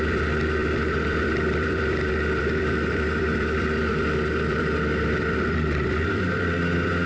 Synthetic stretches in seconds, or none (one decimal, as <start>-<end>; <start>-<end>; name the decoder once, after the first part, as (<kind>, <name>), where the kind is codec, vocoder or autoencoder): 0.0-7.1 (vocoder, BigVGAN v2)